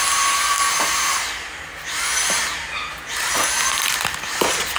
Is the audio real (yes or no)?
yes